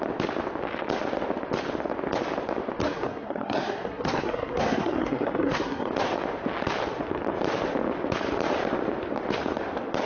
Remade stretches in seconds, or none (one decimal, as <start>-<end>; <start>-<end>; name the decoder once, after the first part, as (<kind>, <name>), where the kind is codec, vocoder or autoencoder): 2.8-5.9 (codec, SNAC)